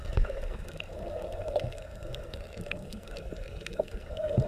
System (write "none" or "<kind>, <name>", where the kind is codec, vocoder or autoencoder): codec, SNAC